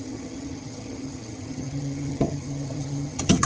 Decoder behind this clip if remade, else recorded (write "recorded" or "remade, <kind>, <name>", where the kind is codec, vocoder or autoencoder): remade, vocoder, HiFi-GAN